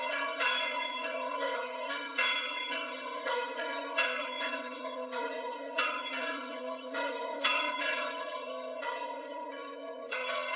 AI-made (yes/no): yes